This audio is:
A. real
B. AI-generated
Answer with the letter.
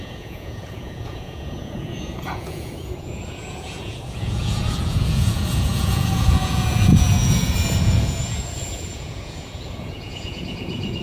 B